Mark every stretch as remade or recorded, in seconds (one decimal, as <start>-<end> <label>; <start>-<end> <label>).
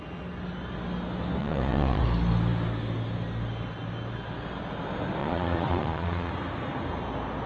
0.0-1.4 recorded; 1.4-2.0 remade; 2.0-5.2 recorded; 5.2-6.3 remade; 6.3-7.5 recorded